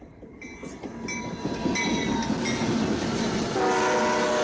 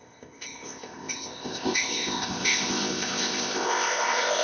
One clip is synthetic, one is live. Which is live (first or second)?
first